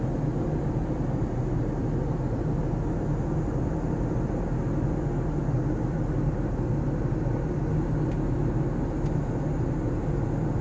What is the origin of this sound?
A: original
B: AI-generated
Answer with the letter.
A